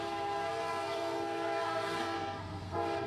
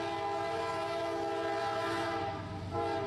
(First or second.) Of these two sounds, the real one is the second